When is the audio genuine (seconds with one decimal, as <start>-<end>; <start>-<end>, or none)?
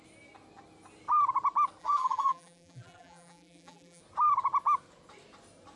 0.0-1.8; 4.0-5.8